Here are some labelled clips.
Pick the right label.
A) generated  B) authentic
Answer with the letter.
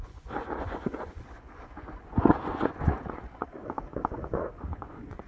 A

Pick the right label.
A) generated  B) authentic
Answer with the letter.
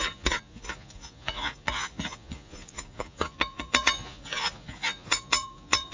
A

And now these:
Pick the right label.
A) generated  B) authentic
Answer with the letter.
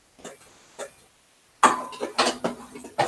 B